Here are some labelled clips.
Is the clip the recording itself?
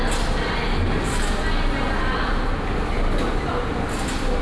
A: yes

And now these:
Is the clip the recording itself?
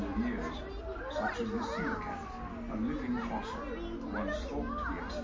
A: yes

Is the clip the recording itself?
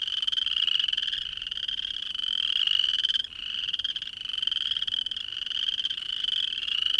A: yes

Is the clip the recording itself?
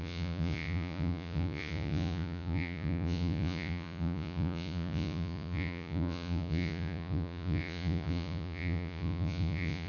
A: no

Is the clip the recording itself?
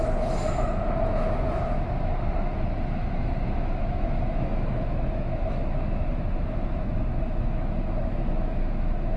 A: no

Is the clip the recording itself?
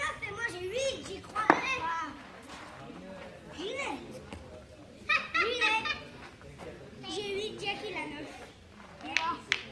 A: yes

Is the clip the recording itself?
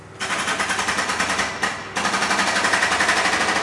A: yes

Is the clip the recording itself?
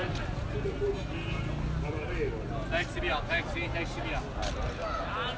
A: yes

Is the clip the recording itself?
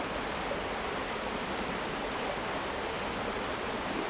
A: yes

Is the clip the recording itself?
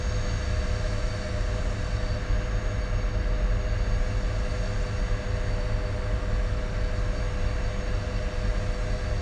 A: yes